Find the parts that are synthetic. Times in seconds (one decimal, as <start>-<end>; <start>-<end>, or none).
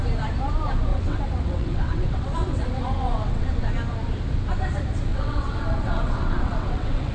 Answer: 0.9-3.7; 5.1-7.1